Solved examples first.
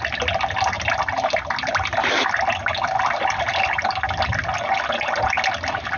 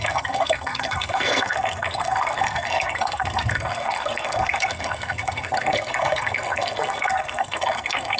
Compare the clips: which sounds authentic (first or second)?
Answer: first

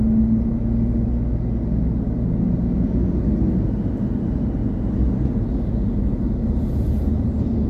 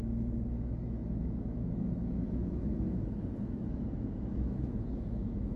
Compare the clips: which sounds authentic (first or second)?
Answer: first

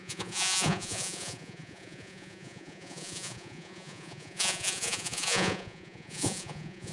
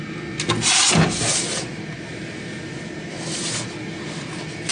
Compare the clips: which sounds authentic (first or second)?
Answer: second